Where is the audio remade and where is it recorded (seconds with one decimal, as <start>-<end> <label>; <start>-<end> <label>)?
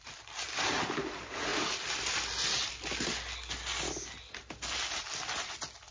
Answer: 0.0-5.9 recorded